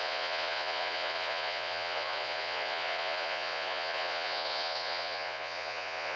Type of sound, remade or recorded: remade